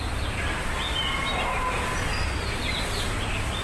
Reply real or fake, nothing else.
real